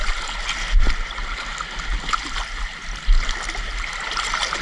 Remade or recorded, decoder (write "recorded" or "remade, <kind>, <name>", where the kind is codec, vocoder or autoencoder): recorded